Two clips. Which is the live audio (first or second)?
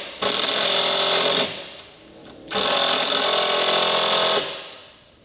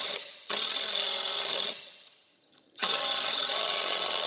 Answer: first